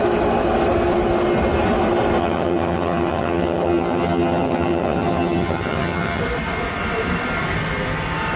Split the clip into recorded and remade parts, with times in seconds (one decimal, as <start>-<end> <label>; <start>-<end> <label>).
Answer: 0.0-2.2 recorded; 2.2-6.2 remade; 6.2-8.4 recorded